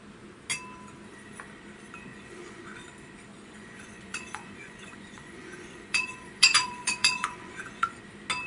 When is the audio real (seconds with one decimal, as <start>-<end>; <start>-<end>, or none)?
0.0-2.1; 2.8-3.3; 8.0-8.5